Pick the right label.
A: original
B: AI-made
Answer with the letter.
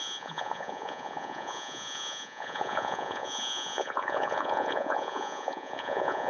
B